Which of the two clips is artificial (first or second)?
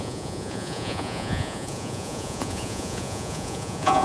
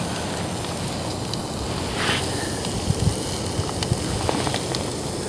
first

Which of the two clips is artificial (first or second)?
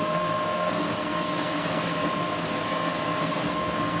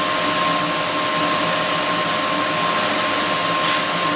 first